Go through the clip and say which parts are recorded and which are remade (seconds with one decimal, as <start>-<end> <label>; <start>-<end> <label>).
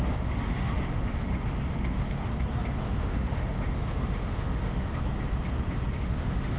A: 0.0-2.3 remade; 2.3-2.8 recorded; 2.8-4.9 remade; 4.9-5.9 recorded; 5.9-6.6 remade